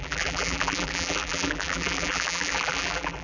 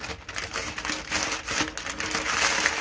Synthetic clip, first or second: first